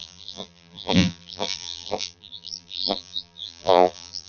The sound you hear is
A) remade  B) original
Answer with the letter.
A